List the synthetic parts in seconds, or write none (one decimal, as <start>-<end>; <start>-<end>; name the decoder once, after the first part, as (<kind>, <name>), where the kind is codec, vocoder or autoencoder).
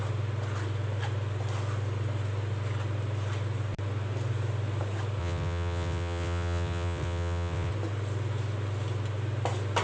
5.2-7.7 (vocoder, WaveNeXt)